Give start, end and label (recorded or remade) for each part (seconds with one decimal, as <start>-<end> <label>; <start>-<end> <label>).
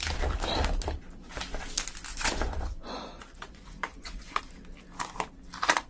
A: 0.0-2.1 recorded; 2.1-4.4 remade; 4.4-5.9 recorded